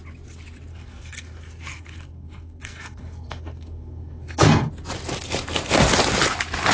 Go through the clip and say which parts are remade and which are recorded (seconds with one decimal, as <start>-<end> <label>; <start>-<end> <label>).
0.0-0.7 recorded; 0.7-4.7 remade; 4.7-6.7 recorded